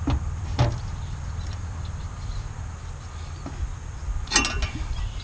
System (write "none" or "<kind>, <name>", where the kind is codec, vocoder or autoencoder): none